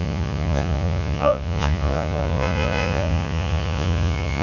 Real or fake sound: fake